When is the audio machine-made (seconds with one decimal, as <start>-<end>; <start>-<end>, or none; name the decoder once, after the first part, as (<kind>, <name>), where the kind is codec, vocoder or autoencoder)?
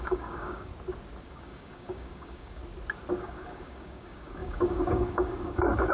0.0-0.7 (codec, DAC); 1.3-2.6; 3.2-5.9